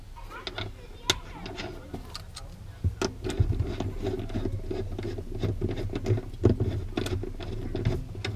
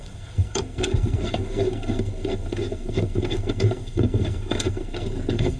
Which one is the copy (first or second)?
second